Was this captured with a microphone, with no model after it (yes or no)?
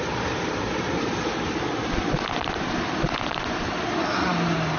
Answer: yes